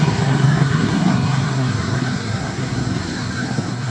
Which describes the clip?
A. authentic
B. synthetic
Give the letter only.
B